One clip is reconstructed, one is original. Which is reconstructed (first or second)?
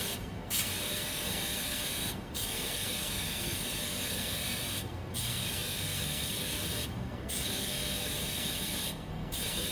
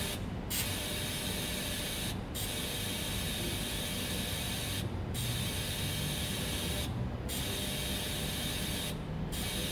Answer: first